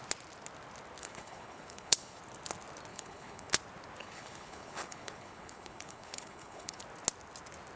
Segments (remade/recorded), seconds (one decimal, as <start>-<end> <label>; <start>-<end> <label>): 0.0-1.0 recorded; 1.0-2.2 remade; 2.2-2.9 recorded; 2.9-3.5 remade; 3.5-4.0 recorded; 4.0-6.8 remade; 6.8-7.8 recorded